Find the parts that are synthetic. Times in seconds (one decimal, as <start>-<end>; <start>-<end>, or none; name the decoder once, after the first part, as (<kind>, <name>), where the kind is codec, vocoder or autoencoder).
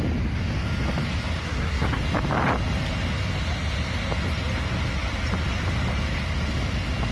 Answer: 1.4-2.0 (codec, SNAC)